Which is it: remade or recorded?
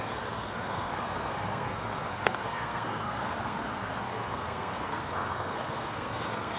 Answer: remade